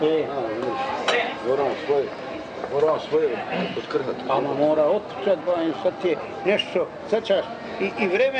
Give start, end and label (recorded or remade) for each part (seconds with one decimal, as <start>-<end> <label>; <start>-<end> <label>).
0.0-5.4 recorded; 5.4-6.2 remade; 6.2-8.4 recorded